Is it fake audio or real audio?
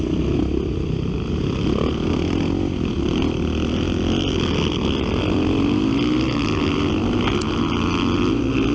real